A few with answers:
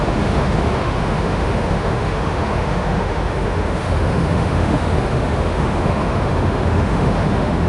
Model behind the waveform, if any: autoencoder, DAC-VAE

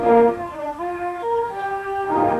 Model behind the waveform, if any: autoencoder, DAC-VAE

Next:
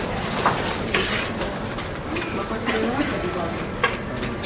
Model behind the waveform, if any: none